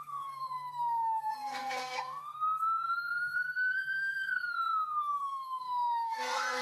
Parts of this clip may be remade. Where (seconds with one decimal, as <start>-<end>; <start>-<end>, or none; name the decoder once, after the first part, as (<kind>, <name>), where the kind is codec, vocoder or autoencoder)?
0.0-6.6 (codec, SNAC)